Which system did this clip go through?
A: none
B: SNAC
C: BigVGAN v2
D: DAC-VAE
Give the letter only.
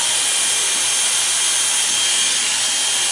A